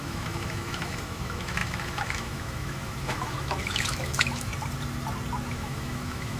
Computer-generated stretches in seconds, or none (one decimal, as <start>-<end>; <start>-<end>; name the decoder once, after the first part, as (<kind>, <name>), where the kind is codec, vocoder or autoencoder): 0.0-4.5 (autoencoder, DAC-VAE); 5.5-6.4